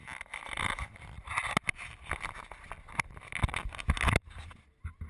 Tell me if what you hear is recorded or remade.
recorded